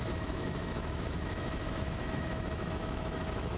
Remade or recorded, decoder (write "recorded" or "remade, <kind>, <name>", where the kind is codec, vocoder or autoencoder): remade, autoencoder, DAC-VAE